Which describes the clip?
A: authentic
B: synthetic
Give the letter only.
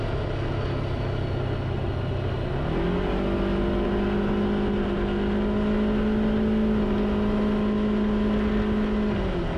A